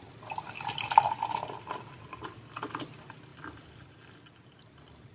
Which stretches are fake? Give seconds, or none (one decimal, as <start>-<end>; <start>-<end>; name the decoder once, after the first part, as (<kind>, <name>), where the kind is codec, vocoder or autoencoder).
none